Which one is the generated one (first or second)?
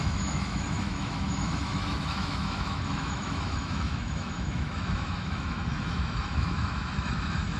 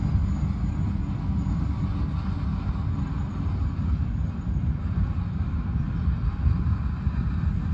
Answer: first